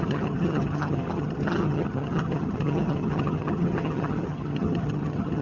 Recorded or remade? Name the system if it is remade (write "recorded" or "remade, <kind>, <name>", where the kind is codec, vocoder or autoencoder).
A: remade, vocoder, HiFi-GAN